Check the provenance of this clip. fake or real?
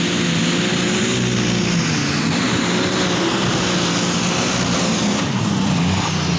real